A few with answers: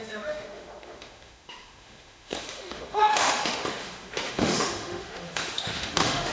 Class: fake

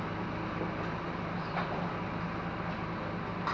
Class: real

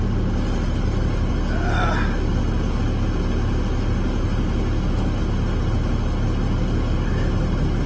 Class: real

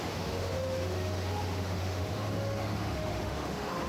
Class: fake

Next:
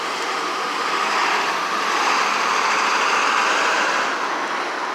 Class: real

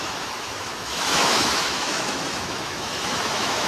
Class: fake